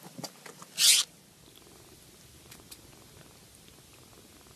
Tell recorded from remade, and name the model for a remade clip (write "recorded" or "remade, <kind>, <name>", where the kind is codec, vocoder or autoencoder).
recorded